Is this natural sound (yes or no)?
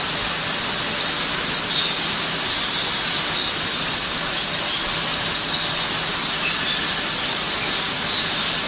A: yes